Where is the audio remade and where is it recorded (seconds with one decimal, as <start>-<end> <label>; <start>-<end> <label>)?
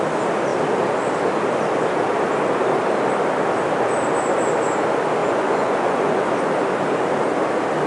0.0-5.2 recorded; 5.2-6.3 remade; 6.3-7.9 recorded